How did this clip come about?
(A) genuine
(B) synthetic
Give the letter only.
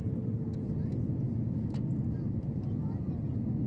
A